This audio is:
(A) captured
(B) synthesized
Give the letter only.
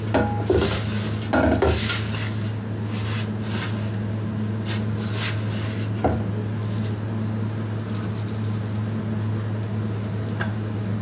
A